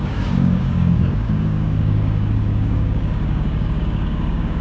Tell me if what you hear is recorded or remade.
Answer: remade